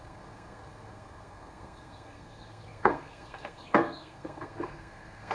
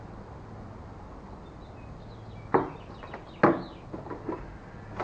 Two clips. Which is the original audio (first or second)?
second